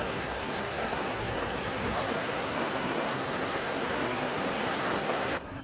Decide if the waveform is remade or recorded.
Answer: remade